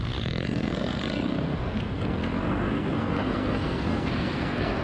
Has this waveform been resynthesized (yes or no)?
yes